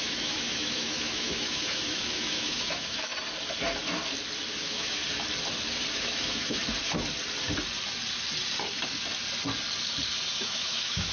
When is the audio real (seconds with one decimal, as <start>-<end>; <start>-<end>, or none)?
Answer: 3.1-4.5; 5.0-5.9; 6.6-10.4